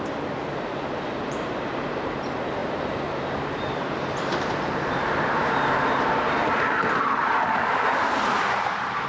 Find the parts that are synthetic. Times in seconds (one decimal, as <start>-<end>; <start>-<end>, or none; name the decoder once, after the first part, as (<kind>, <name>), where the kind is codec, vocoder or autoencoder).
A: 0.0-9.1 (vocoder, BigVGAN v2)